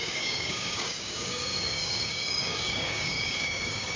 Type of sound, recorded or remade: remade